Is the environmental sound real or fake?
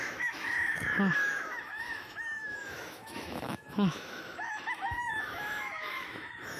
fake